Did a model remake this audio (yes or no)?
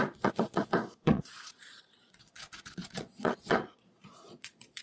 yes